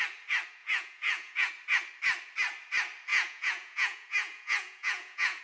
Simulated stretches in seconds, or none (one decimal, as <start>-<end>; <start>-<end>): 0.6-1.5; 3.1-5.4